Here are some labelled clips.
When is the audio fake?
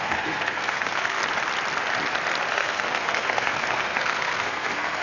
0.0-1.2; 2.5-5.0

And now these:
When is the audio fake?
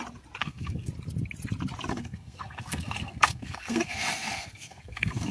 0.4-0.9; 1.9-5.3